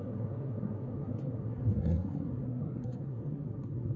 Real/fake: fake